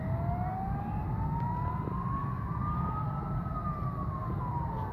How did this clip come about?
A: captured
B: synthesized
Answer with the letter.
A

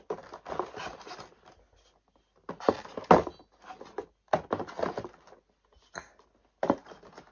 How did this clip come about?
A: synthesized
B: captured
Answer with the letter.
B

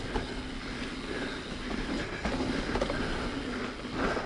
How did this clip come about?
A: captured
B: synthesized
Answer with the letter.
A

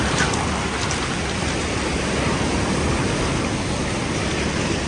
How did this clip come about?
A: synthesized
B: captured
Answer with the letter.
B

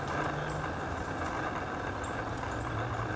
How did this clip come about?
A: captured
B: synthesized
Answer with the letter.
A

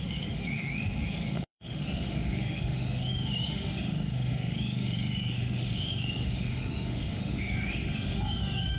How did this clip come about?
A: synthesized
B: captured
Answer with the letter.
A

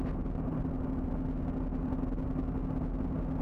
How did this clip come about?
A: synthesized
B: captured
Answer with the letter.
B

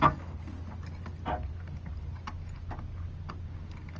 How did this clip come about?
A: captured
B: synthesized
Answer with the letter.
A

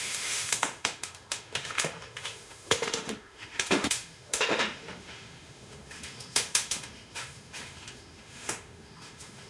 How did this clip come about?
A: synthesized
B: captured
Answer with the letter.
A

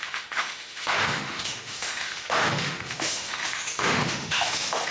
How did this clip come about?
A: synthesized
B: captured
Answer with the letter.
A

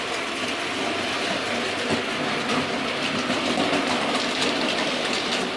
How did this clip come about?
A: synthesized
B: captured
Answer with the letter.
B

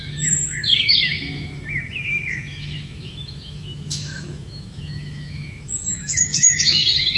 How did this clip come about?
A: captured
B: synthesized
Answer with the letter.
B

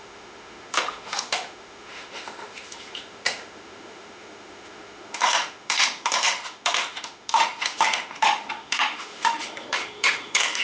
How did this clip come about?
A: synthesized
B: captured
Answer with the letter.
A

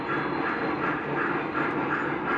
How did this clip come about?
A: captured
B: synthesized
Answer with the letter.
A